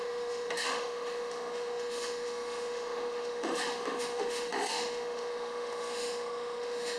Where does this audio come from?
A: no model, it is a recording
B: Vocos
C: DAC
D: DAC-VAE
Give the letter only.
D